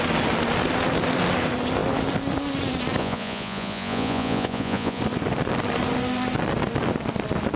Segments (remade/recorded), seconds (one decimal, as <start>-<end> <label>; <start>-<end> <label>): 0.0-3.0 recorded; 3.0-5.0 remade; 5.0-7.6 recorded